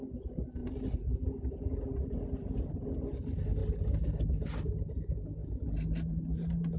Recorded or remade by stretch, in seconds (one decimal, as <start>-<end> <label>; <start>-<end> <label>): 0.0-6.8 recorded